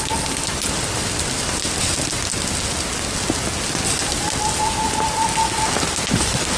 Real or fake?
real